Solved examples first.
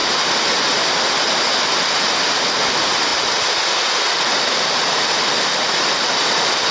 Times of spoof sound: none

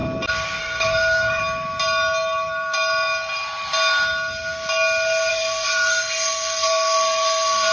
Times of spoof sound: 0.6-1.4 (codec, SNAC); 5.3-7.7

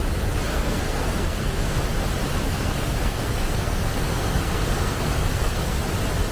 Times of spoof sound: 0.5-1.8 (codec, SNAC); 2.4-5.8

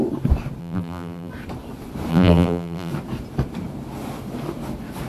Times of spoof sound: 0.6-1.3 (vocoder, BigVGAN v2); 2.1-2.9

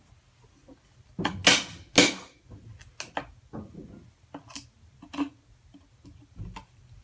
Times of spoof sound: none

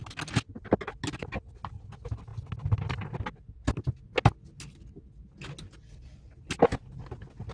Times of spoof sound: none

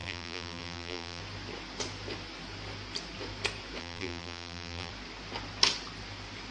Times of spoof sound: 0.0-1.2 (vocoder, BigVGAN v2); 3.8-4.9

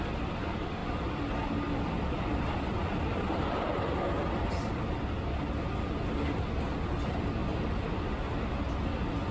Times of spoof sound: 0.8-3.5 (vocoder, BigVGAN v2); 7.4-8.2